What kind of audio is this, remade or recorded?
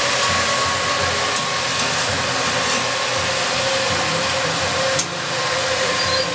recorded